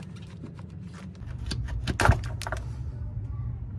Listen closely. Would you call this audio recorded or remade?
recorded